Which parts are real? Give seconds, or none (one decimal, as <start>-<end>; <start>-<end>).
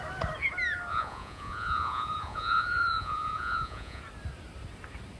0.0-0.9; 4.0-5.2